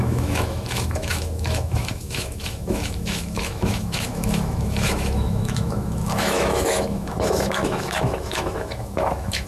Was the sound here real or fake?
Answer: fake